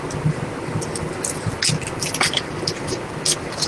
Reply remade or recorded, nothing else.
recorded